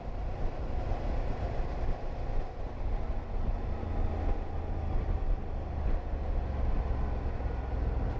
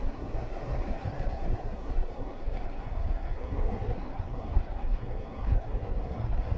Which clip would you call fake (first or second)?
second